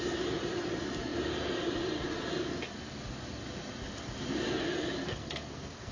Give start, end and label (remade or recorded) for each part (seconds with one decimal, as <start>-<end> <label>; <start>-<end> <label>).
0.0-5.0 recorded; 5.0-5.9 remade